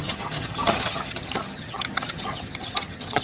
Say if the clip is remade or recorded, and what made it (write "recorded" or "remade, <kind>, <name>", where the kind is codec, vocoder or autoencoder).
remade, vocoder, HiFi-GAN